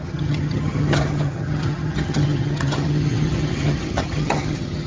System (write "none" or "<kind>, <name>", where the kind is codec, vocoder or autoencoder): vocoder, HiFi-GAN